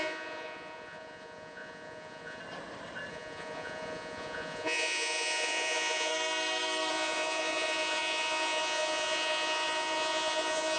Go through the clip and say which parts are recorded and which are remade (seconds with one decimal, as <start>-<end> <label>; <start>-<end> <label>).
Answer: 0.0-2.4 remade; 2.4-3.1 recorded; 3.1-6.1 remade; 6.1-6.9 recorded; 6.9-10.8 remade